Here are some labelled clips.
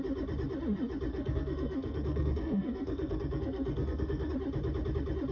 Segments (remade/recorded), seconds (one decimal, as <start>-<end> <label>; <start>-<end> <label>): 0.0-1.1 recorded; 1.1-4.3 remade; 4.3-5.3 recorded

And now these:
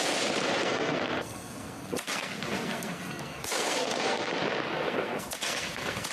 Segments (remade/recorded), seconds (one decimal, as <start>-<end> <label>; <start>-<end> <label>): 0.0-0.6 recorded; 0.6-4.3 remade; 4.3-4.7 recorded; 4.7-6.1 remade

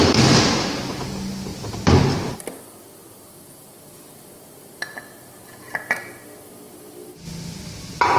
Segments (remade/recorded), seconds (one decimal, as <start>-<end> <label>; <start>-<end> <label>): 0.0-8.2 recorded